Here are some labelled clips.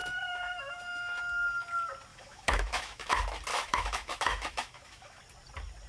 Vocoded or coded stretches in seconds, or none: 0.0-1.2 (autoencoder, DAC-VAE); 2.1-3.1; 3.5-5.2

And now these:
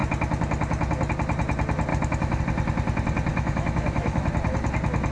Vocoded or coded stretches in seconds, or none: 1.9-2.4 (autoencoder, DAC-VAE); 3.3-4.3

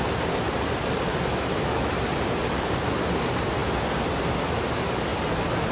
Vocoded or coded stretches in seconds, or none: 1.3-1.9 (autoencoder, DAC-VAE)

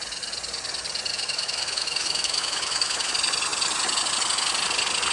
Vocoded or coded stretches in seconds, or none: 1.1-3.1 (autoencoder, DAC-VAE)

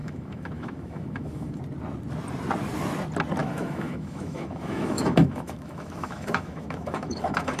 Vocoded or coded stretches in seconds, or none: 0.0-1.6 (autoencoder, DAC-VAE); 3.4-7.6

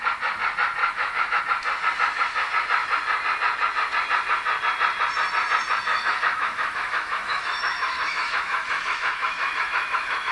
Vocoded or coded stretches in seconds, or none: 0.8-1.4 (autoencoder, DAC-VAE); 5.9-10.3

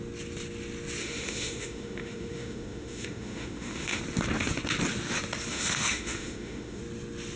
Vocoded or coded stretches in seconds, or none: 1.0-4.0 (autoencoder, DAC-VAE); 5.5-6.8